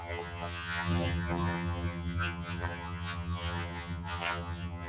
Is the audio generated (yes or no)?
yes